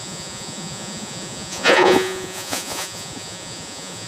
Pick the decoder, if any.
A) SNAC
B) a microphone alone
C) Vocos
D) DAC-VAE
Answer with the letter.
C